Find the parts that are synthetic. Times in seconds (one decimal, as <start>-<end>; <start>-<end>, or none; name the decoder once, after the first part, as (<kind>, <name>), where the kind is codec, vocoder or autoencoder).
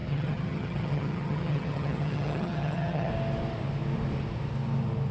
0.0-3.1 (vocoder, HiFi-GAN)